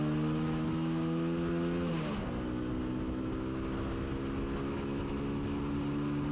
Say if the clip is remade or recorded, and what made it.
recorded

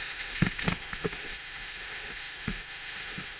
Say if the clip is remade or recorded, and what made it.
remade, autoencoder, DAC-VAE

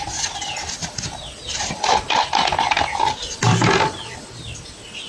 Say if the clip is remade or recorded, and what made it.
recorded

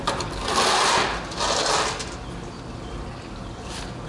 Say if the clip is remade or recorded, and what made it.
recorded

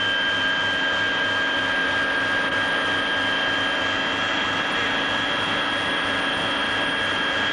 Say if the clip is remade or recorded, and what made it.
recorded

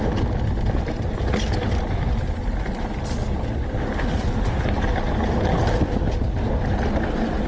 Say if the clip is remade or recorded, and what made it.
recorded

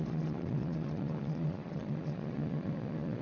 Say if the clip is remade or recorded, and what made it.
remade, vocoder, Vocos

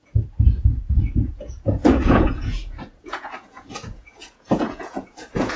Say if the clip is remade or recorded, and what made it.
remade, vocoder, Vocos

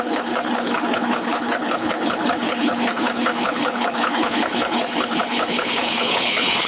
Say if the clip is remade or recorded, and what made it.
remade, codec, HILCodec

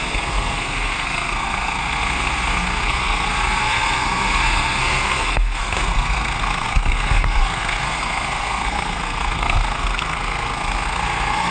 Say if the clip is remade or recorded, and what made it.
remade, codec, SNAC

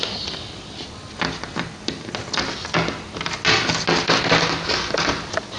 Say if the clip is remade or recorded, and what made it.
recorded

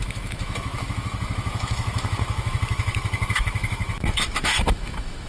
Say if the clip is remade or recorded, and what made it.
remade, autoencoder, DAC-VAE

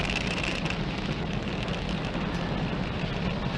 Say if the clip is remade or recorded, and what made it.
recorded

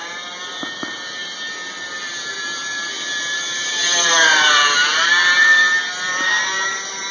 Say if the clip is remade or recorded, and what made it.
remade, vocoder, BigVGAN v2